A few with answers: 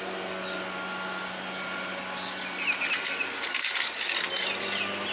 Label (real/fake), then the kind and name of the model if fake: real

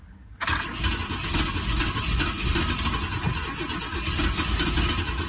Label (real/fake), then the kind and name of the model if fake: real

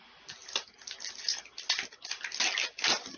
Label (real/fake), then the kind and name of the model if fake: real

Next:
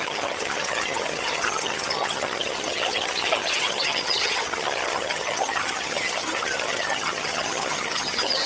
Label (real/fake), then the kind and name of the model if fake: fake, vocoder, HiFi-GAN